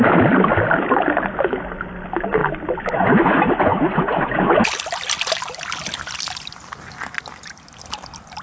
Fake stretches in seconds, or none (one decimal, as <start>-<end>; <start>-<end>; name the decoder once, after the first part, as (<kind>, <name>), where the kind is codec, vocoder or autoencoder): none